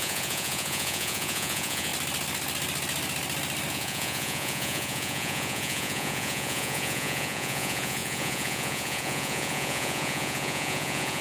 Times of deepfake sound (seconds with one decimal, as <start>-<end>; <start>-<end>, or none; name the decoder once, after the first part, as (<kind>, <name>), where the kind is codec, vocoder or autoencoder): 0.0-1.9 (vocoder, Vocos); 3.7-11.2